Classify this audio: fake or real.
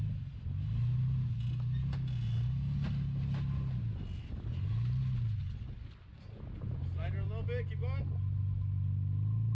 real